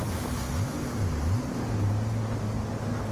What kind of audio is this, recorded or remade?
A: recorded